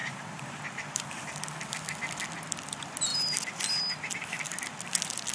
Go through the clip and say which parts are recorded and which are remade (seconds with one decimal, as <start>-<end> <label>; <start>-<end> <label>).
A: 0.0-1.2 remade; 1.2-5.3 recorded